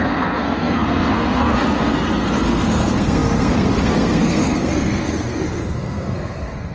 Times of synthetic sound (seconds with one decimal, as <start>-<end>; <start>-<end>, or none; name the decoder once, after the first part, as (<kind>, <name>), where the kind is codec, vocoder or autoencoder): 0.0-6.7 (codec, SNAC)